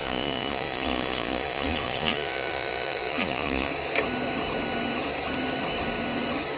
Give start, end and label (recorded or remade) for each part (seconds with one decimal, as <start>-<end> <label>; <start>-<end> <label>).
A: 0.0-3.7 remade; 3.7-6.6 recorded

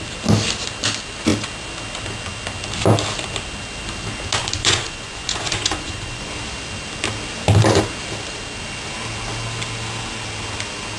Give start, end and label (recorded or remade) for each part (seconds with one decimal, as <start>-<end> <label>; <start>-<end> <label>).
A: 0.0-4.4 recorded; 4.4-6.3 remade; 6.3-11.0 recorded

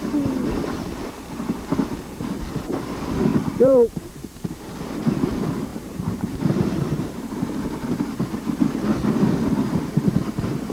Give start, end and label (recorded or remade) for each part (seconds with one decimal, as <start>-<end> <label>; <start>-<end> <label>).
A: 0.0-3.3 recorded; 3.3-4.1 remade; 4.1-5.7 recorded; 5.7-7.3 remade; 7.3-10.7 recorded

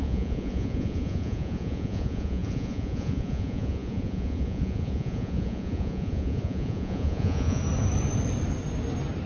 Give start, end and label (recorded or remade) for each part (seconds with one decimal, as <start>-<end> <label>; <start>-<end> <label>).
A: 0.0-7.6 remade; 7.6-9.3 recorded

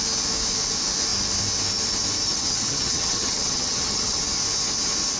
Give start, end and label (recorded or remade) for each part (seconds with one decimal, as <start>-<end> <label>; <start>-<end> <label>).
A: 0.0-2.3 recorded; 2.3-4.2 remade; 4.2-5.2 recorded

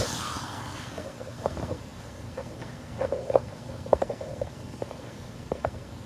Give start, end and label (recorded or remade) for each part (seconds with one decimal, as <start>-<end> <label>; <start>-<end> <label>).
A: 0.0-6.1 remade

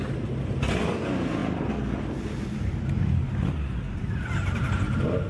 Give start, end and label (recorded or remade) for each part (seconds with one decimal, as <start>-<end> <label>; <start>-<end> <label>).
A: 0.0-5.3 recorded

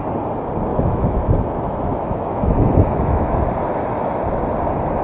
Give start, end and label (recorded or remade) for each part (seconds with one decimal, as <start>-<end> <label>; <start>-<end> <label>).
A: 0.0-0.7 recorded; 0.7-1.3 remade; 1.3-1.9 recorded; 1.9-3.4 remade; 3.4-5.0 recorded